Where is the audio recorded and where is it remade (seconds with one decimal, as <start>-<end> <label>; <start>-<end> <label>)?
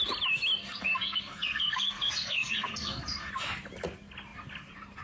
0.0-0.6 recorded; 0.6-3.3 remade; 3.3-5.0 recorded